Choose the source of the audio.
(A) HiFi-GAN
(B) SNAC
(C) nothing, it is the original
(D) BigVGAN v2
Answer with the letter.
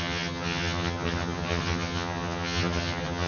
A